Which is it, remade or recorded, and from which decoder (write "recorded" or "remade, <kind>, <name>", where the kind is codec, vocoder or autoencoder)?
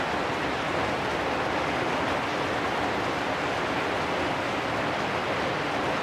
recorded